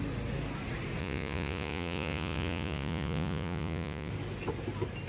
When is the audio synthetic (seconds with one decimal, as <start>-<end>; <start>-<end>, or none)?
1.0-4.1